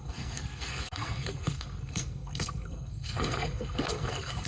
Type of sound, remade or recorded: remade